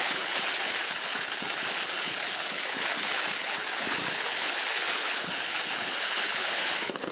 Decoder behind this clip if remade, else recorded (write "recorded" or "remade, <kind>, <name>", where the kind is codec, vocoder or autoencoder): remade, codec, HILCodec